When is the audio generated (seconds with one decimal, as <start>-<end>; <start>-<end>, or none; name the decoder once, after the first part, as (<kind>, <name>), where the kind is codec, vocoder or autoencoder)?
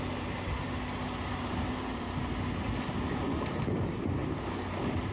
none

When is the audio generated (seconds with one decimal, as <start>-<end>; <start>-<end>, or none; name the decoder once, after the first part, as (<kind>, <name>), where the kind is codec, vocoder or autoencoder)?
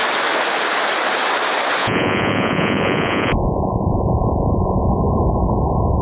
1.8-4.9 (vocoder, Vocos)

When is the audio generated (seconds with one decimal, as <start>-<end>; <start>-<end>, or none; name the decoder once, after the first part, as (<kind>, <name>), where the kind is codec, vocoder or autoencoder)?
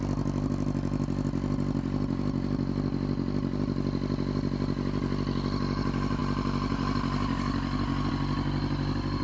none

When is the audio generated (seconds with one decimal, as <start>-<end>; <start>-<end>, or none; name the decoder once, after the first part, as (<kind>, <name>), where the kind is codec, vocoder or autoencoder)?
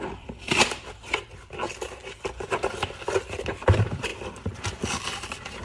0.0-5.6 (vocoder, BigVGAN v2)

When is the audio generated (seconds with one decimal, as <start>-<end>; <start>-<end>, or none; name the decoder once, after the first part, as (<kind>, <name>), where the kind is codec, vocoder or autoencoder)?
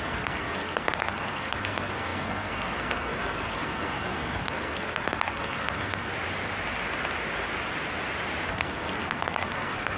0.0-6.1 (codec, SNAC); 8.5-10.0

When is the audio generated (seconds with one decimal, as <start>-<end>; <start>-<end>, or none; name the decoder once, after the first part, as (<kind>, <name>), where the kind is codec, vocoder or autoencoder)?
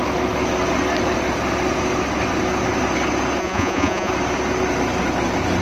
3.4-4.1 (vocoder, Vocos)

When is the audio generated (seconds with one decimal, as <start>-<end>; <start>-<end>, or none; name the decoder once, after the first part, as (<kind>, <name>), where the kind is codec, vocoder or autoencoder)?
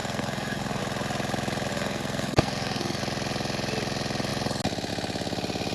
0.0-0.8 (codec, SNAC); 1.7-3.0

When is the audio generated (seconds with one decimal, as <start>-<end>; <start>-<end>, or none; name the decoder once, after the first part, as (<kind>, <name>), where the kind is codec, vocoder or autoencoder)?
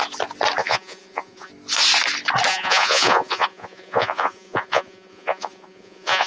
0.6-1.5 (vocoder, Vocos); 2.5-6.3